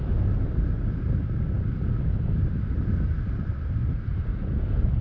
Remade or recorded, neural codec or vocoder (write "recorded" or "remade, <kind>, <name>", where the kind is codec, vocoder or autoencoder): recorded